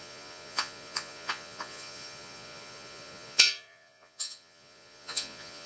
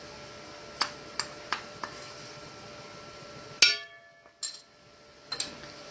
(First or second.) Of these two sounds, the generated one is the first